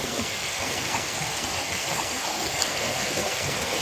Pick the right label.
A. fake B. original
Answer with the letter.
A